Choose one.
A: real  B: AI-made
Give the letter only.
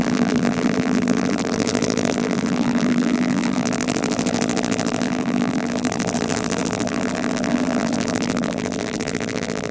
B